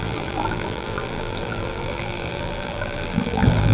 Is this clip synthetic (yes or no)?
yes